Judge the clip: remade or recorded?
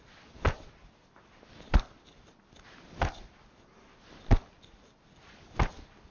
recorded